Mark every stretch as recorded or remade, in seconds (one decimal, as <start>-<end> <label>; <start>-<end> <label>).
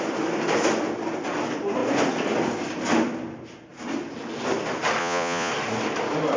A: 0.0-5.0 recorded; 5.0-5.5 remade; 5.5-6.4 recorded